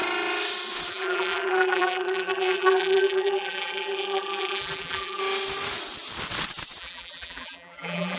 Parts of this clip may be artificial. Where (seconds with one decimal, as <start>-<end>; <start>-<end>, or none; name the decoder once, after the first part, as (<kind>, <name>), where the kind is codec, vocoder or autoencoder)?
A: 0.9-5.2 (vocoder, BigVGAN v2); 6.8-8.2